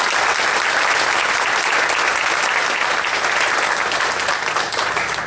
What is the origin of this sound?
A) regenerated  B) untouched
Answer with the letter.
B